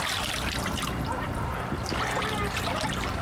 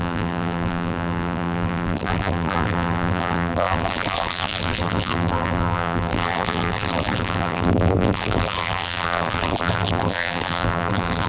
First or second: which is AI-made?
second